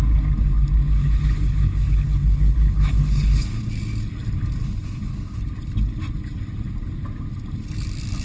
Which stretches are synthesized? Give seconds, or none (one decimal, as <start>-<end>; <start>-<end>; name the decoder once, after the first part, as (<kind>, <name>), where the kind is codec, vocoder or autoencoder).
1.0-3.6 (codec, HILCodec); 4.6-5.4